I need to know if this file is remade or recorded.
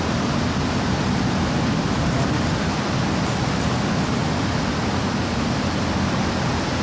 recorded